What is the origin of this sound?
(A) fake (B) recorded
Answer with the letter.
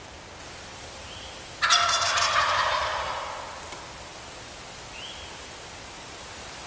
B